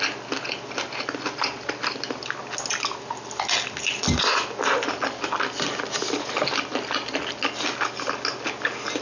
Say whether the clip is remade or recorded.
recorded